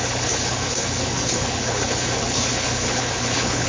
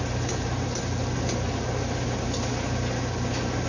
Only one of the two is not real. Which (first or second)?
first